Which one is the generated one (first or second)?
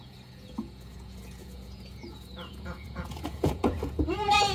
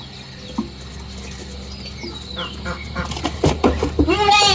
first